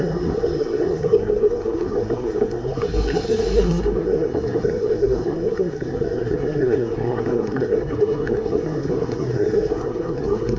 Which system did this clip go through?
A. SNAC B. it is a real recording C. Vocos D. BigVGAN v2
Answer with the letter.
A